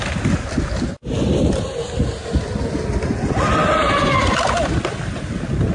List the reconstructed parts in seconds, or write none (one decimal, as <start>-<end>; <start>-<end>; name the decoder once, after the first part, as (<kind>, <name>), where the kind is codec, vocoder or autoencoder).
none